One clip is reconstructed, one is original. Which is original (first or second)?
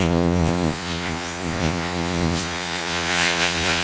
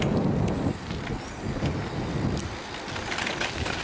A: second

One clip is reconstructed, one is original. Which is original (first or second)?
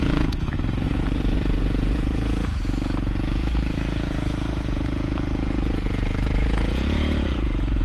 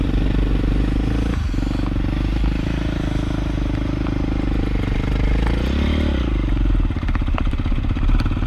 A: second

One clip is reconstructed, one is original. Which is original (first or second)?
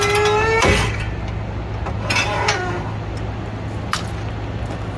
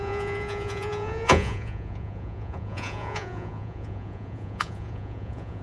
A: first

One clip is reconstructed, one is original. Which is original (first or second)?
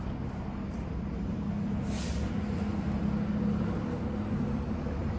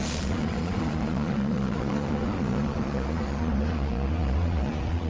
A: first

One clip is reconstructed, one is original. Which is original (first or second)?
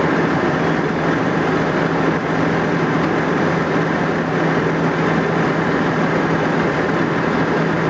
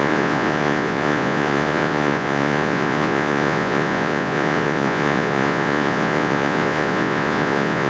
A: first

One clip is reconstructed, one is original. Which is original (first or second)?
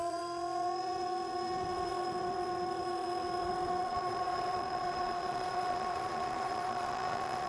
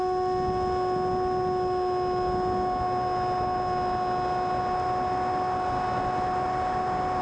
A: second